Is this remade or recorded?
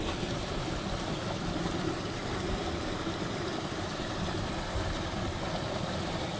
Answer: recorded